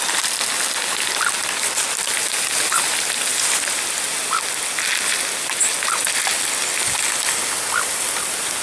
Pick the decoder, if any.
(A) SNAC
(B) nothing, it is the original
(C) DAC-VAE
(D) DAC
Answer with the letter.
B